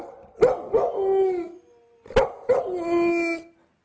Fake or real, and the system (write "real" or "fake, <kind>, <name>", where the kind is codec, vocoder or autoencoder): real